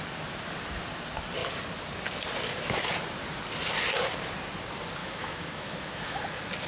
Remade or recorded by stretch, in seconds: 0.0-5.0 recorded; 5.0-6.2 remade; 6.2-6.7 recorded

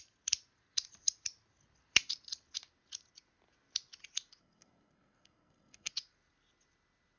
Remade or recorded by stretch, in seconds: 0.0-4.4 recorded; 4.4-5.9 remade; 5.9-7.2 recorded